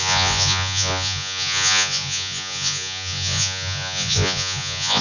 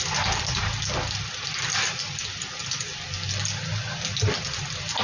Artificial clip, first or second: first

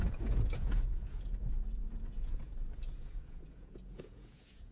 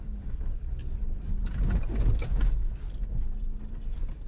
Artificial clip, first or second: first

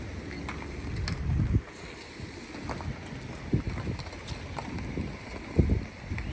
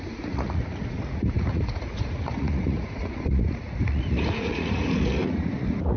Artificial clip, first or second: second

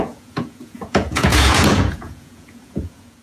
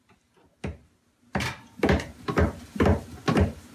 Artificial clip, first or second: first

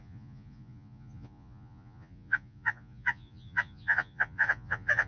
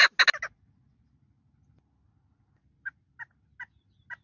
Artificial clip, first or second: first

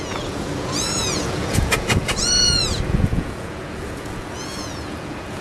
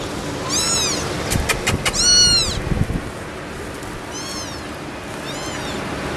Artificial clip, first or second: first